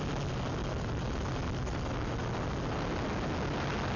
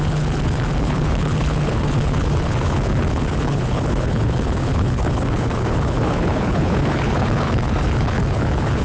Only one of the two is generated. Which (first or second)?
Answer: second